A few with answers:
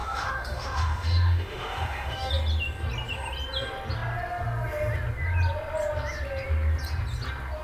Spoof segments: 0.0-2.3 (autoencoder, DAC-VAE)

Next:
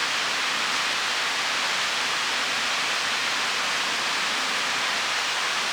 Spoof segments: none

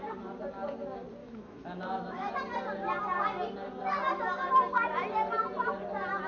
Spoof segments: 1.2-2.3 (autoencoder, DAC-VAE)

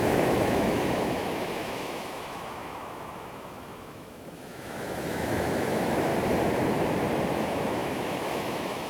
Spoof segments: 0.0-6.1 (autoencoder, DAC-VAE); 7.3-8.9